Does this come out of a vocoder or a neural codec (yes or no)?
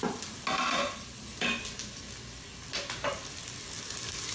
no